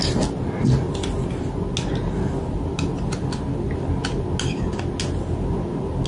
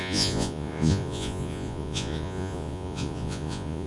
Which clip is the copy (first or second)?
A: second